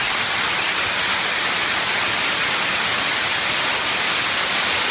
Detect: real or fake real